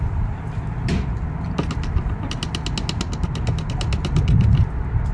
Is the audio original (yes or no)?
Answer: yes